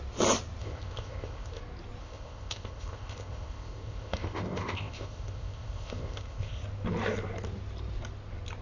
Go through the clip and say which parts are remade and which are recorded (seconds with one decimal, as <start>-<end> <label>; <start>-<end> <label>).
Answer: 0.0-0.6 recorded; 0.6-1.6 remade; 1.6-2.0 recorded; 2.0-6.6 remade; 6.6-8.6 recorded